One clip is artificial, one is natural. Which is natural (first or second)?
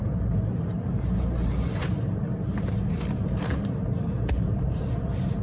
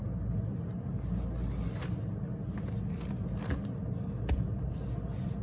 second